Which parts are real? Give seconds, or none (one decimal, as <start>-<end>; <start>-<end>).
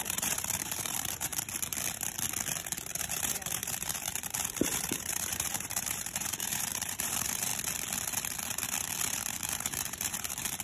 1.3-2.9; 7.5-9.5